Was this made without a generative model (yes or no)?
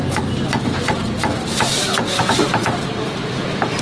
yes